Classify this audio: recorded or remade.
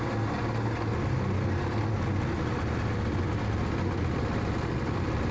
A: recorded